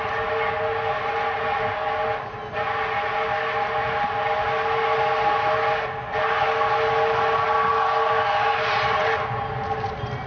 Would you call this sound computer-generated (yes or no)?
no